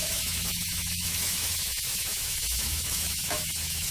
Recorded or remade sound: remade